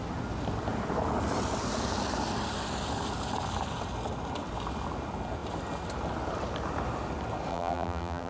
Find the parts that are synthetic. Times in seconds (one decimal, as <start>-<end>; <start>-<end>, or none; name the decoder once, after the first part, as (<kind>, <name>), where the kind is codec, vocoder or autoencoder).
7.5-8.3 (vocoder, BigVGAN v2)